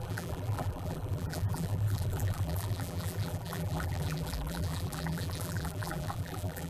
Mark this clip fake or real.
fake